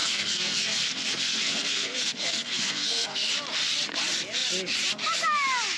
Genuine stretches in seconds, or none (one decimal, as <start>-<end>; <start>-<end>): 3.3-5.8